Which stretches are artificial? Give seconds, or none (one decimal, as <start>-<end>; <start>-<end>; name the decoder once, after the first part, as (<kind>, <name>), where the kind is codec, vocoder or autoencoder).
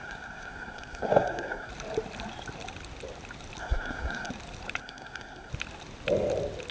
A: 0.0-1.7 (codec, SNAC); 3.6-4.3; 4.8-5.5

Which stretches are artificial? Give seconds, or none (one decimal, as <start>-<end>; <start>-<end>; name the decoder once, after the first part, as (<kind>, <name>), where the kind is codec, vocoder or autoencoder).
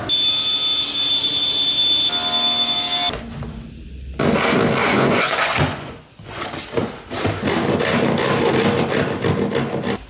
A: 4.8-6.4 (vocoder, Vocos)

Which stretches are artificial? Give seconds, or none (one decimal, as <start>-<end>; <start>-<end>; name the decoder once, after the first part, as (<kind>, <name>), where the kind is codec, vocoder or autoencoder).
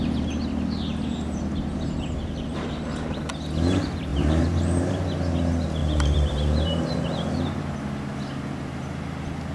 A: 1.7-3.3 (vocoder, BigVGAN v2); 4.1-4.9; 5.8-7.6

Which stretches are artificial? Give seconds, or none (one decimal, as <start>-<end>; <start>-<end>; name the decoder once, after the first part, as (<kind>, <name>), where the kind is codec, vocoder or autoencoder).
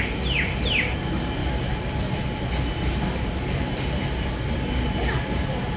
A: none